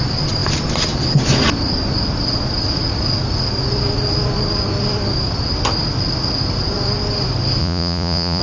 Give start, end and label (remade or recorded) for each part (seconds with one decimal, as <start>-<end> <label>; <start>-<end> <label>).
0.0-7.6 recorded; 7.6-8.4 remade